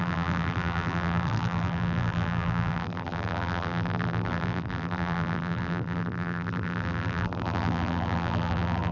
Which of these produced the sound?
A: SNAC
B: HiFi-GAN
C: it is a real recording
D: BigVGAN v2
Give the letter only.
D